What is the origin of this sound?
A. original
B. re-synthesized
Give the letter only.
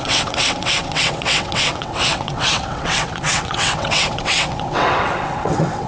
B